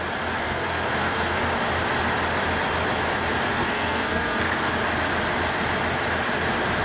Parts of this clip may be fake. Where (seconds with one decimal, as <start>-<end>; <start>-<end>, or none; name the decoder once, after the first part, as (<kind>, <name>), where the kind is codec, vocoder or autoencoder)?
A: 0.4-1.4 (codec, SNAC); 3.5-4.7